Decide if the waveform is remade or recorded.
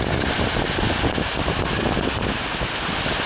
recorded